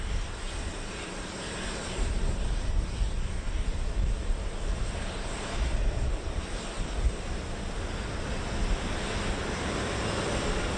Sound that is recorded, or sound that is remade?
recorded